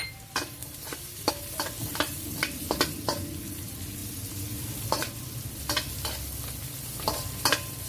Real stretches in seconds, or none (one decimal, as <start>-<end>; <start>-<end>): none